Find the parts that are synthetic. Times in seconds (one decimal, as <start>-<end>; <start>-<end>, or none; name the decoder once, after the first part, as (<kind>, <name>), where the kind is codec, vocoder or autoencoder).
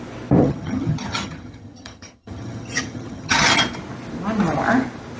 0.4-3.5 (vocoder, HiFi-GAN)